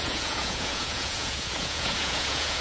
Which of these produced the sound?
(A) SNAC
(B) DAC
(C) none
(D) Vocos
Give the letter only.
D